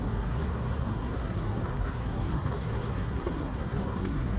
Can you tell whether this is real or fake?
fake